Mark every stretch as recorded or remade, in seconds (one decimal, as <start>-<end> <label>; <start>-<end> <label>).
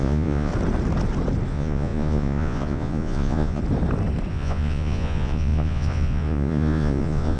0.0-0.5 remade; 0.5-1.5 recorded; 1.5-3.6 remade; 3.6-4.3 recorded; 4.3-7.4 remade